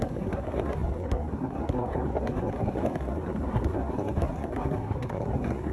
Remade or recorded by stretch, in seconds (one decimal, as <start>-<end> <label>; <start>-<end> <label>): 0.0-5.7 remade